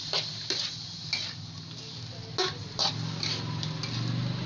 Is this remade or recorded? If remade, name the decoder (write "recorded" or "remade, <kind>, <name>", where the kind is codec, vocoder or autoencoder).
recorded